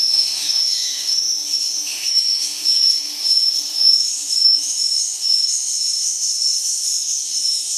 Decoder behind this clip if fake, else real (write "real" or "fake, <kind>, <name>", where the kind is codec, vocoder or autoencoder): fake, autoencoder, DAC-VAE